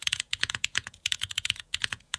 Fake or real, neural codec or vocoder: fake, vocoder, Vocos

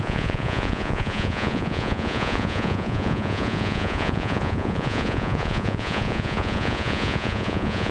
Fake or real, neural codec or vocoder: fake, vocoder, Vocos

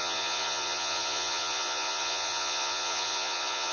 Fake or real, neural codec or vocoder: fake, vocoder, Vocos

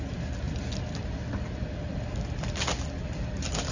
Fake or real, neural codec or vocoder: real